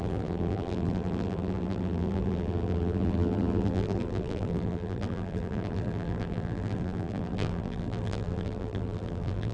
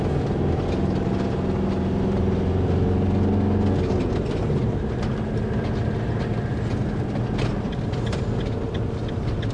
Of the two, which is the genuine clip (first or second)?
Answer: second